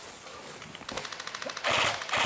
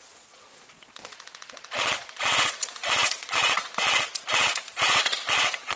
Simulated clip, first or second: second